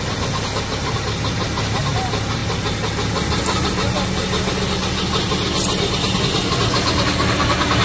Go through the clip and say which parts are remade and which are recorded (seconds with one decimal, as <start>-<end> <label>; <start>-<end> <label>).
0.0-7.8 recorded